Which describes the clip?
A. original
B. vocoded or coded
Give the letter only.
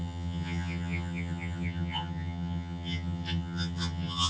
B